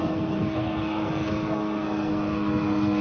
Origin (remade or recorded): remade